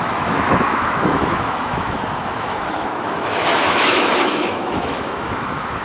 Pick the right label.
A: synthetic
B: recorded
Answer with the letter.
A